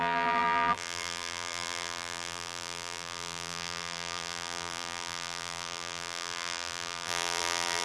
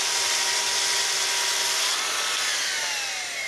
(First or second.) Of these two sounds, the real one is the second